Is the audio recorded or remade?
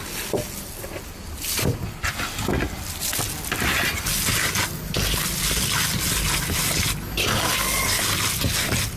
recorded